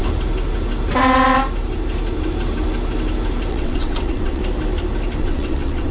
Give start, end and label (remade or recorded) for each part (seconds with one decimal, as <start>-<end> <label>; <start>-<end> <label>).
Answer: 0.0-3.5 recorded; 3.5-4.4 remade; 4.4-5.2 recorded; 5.2-5.9 remade